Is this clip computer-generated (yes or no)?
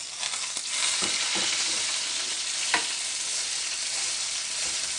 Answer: no